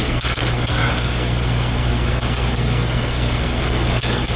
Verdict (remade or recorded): remade